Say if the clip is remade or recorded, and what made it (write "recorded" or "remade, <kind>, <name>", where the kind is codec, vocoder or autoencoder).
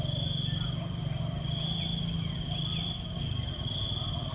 recorded